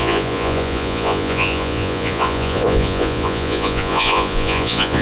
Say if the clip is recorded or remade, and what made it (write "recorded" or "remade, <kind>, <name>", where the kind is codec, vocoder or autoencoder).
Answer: remade, vocoder, Vocos